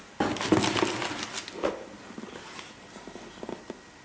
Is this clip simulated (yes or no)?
no